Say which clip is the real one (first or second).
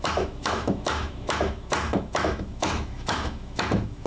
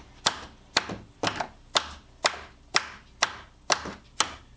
second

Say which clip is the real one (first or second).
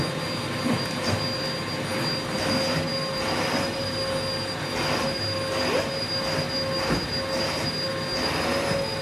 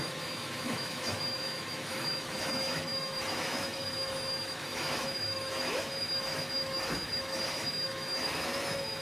first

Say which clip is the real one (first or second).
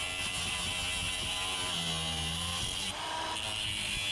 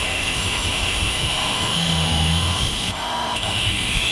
first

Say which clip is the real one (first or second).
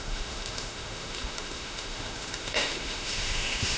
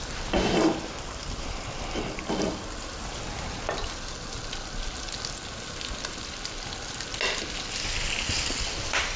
second